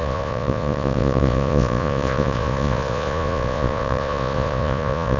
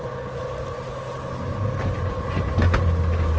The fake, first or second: first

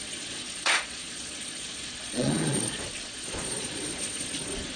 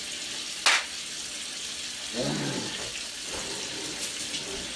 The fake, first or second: first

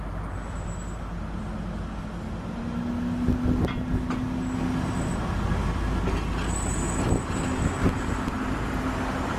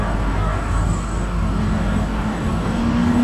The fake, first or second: second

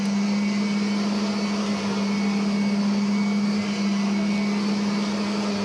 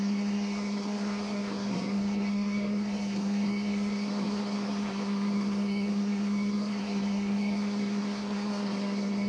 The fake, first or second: second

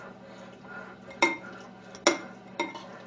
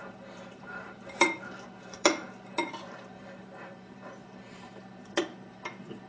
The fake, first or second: second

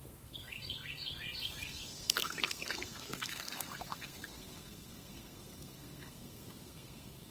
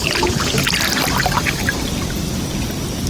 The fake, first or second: first